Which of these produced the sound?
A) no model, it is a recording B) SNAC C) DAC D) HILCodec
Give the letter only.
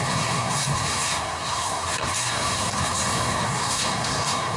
B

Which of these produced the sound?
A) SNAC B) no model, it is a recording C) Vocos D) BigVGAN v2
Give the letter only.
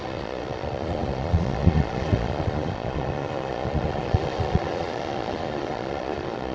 C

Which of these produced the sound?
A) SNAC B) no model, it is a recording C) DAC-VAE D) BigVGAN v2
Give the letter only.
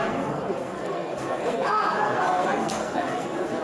A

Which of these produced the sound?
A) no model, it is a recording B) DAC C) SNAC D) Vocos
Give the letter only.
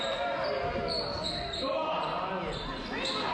A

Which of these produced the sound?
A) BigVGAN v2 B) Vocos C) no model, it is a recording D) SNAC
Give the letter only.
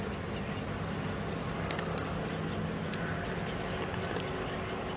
C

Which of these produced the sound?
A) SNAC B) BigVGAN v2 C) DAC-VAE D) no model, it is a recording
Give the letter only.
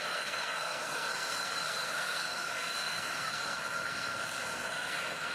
A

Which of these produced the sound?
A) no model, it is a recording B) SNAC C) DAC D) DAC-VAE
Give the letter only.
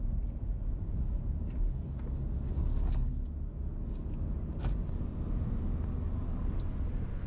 A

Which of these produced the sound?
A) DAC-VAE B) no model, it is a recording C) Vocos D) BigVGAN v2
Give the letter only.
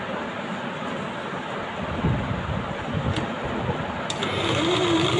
B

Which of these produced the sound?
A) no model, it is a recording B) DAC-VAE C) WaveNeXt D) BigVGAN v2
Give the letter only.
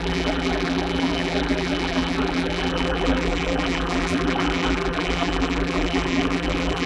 D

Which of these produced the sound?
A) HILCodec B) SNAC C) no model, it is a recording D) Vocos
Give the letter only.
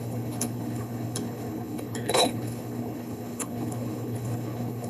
A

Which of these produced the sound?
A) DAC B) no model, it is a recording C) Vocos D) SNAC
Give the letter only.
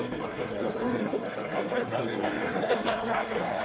D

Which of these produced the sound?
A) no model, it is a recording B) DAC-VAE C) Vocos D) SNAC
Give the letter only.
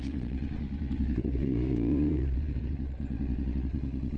C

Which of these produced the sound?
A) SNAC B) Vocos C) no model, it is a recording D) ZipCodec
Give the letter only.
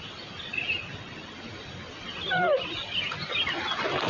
C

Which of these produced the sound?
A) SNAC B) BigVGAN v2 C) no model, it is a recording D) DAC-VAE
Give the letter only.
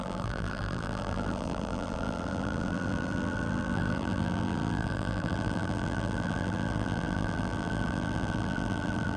B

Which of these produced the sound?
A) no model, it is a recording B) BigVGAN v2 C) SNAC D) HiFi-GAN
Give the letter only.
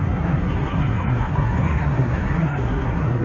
C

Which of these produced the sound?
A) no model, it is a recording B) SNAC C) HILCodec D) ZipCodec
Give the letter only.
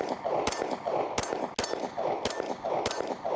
A